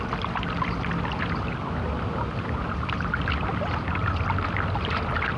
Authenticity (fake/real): real